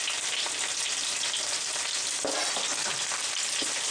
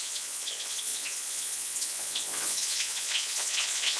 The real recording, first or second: first